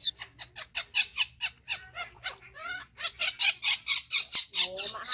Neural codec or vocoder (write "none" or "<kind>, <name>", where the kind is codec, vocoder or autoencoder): none